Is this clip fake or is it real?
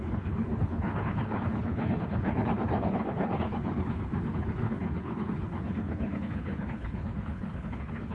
fake